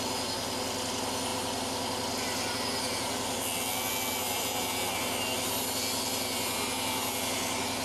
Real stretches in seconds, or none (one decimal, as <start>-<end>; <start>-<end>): 0.0-7.8